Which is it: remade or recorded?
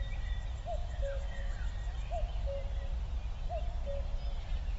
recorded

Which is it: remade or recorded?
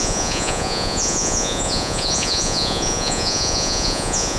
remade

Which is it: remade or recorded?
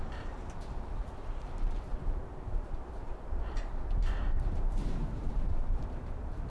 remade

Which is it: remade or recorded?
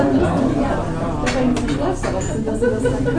recorded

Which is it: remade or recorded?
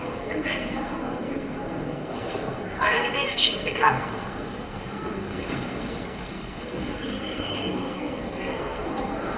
remade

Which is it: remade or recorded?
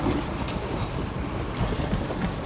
recorded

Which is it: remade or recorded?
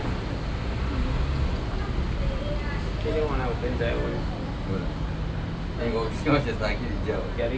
recorded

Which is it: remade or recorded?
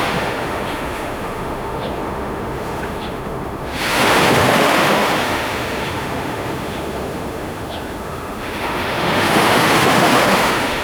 remade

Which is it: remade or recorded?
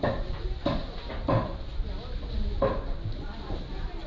recorded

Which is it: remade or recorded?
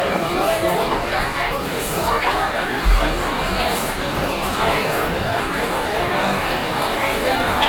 remade